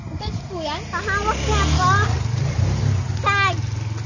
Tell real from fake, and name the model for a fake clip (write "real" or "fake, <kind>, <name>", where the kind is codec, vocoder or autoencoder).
real